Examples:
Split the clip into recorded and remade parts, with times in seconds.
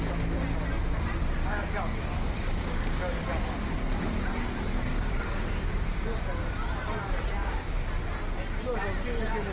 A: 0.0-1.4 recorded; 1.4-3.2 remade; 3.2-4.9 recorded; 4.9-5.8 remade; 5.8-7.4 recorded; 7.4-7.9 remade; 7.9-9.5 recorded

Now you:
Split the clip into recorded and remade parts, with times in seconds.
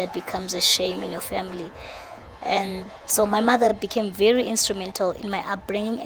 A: 0.0-3.7 remade; 3.7-6.1 recorded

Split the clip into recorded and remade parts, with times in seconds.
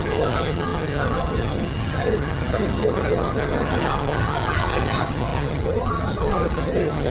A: 0.0-7.1 remade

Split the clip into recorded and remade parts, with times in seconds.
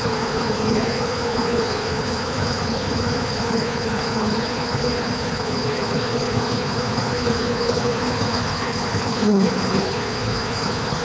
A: 0.0-11.0 remade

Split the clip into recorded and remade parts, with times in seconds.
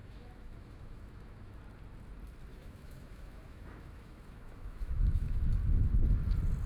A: 0.0-1.6 remade; 1.6-2.5 recorded; 2.5-5.4 remade; 5.4-6.7 recorded